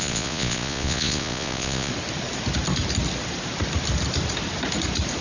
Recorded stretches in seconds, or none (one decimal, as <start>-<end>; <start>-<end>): 1.9-5.2